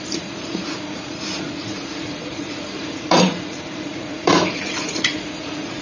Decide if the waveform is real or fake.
fake